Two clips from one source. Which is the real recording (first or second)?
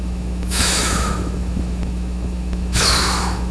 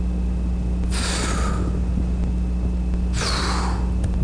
second